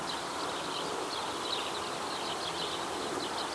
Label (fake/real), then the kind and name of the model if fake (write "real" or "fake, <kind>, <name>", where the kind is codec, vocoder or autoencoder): real